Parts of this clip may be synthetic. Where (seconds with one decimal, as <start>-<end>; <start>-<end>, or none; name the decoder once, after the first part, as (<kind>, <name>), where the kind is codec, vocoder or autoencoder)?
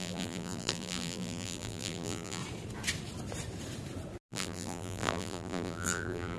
0.0-2.4 (vocoder, BigVGAN v2); 4.3-6.4